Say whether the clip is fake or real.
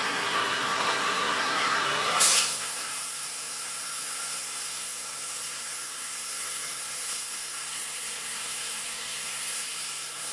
fake